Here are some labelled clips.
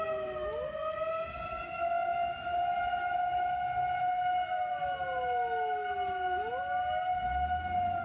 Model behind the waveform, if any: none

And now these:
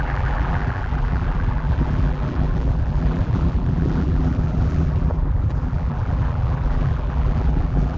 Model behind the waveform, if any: vocoder, BigVGAN v2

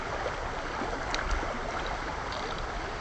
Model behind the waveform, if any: none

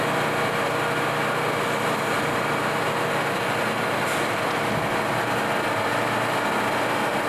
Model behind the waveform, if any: none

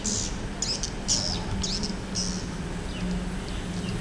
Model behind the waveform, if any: none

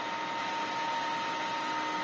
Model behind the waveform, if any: none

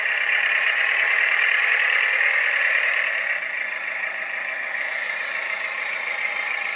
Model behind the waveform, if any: none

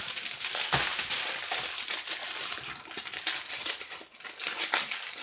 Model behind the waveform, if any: none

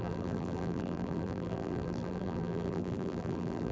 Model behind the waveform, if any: vocoder, BigVGAN v2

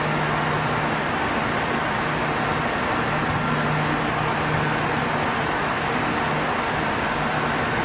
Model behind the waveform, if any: none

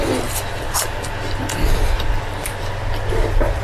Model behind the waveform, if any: vocoder, BigVGAN v2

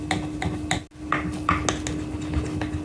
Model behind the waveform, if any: none